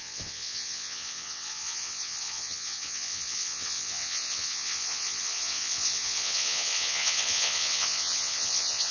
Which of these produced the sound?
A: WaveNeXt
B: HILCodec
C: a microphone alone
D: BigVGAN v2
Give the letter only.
A